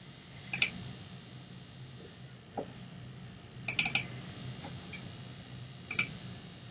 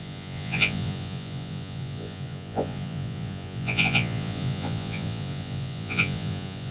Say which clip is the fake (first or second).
second